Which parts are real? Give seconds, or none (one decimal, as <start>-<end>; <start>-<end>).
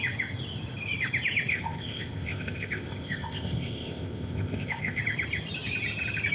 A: 0.0-1.5; 5.0-6.3